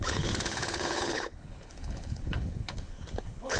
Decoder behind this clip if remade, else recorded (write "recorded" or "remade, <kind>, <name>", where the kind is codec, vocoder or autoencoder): remade, codec, HILCodec